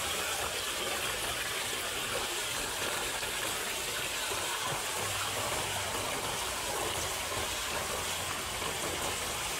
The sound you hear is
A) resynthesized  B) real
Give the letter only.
B